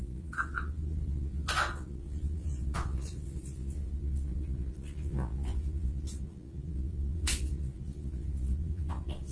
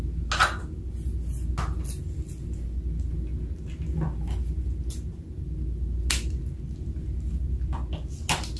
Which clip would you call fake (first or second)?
first